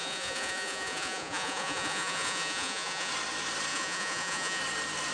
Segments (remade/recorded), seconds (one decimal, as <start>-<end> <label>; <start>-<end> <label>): 0.0-3.1 remade; 3.1-3.7 recorded; 3.7-4.6 remade; 4.6-5.1 recorded